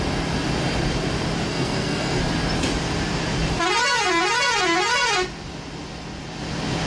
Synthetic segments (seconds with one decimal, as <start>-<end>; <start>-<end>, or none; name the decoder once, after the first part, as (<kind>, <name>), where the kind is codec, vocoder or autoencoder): 1.5-2.2 (codec, SNAC)

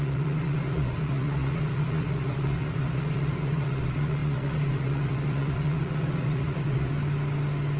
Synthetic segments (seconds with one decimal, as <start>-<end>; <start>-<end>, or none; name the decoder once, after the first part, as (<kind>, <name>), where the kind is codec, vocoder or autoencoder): 0.0-6.9 (vocoder, Vocos)

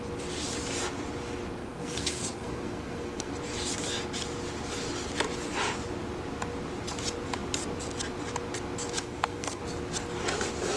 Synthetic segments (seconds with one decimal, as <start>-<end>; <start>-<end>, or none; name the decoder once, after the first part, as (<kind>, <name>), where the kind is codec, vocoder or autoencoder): 1.6-3.3 (codec, SNAC); 9.0-9.6

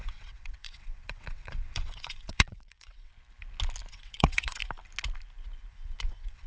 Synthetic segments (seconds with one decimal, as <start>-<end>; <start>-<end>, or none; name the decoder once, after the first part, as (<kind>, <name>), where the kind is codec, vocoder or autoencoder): 0.0-3.1 (vocoder, WaveNeXt); 3.9-4.6; 5.7-6.5

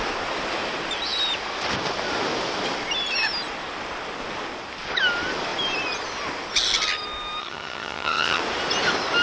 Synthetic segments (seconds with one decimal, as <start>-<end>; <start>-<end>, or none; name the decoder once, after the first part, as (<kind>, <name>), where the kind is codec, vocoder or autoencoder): 7.4-8.4 (vocoder, HiFi-GAN)

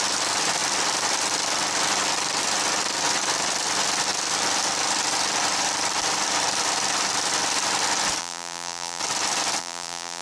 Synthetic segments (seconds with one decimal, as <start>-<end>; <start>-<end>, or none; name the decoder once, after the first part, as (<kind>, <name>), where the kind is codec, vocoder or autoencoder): 8.2-9.0 (vocoder, BigVGAN v2); 9.6-10.2